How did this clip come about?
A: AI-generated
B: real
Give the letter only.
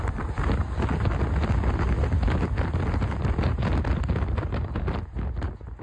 B